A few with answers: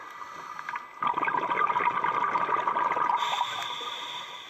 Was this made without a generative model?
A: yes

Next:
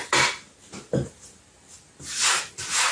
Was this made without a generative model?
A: yes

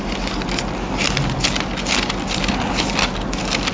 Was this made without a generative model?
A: yes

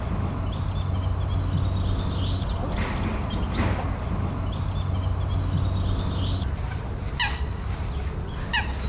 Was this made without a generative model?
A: yes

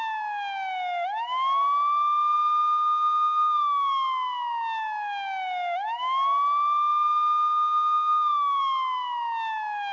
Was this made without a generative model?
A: yes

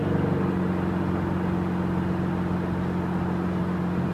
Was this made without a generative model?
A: yes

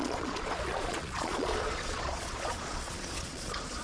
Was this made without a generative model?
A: no